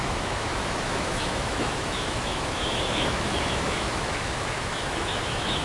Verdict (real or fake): fake